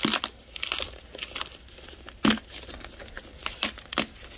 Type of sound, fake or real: real